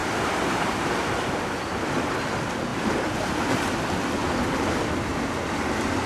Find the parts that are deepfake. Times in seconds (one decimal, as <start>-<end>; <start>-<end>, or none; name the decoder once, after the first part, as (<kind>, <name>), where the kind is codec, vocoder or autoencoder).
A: 0.0-1.4 (vocoder, BigVGAN v2); 2.7-3.7